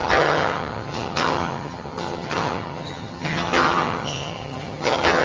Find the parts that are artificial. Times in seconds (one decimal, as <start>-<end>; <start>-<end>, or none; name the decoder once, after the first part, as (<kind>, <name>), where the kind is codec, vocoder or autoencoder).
0.0-5.2 (vocoder, HiFi-GAN)